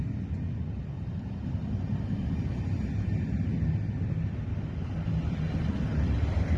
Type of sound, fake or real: real